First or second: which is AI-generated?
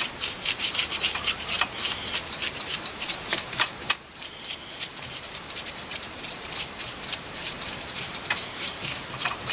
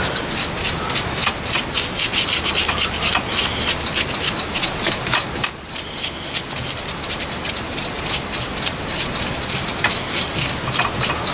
first